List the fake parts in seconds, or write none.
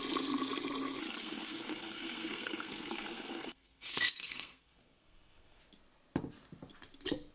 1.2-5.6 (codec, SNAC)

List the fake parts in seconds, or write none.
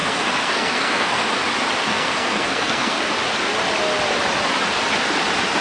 0.0-1.2 (codec, SNAC); 1.9-3.1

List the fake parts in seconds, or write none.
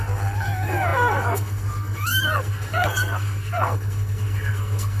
0.0-5.0 (codec, SNAC)